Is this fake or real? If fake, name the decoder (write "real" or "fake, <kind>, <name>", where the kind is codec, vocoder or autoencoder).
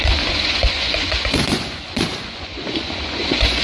fake, vocoder, Vocos